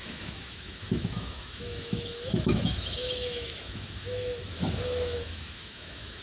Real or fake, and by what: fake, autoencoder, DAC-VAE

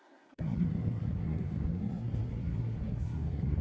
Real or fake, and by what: fake, codec, SNAC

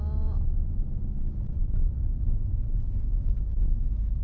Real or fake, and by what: real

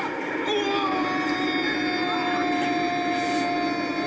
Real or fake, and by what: real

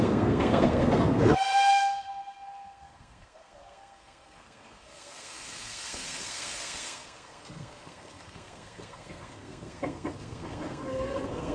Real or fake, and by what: fake, codec, SNAC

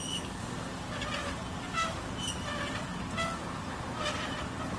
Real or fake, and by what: real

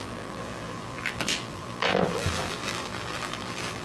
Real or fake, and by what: fake, vocoder, BigVGAN v2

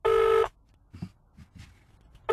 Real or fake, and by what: real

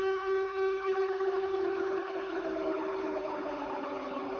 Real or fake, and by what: fake, codec, HILCodec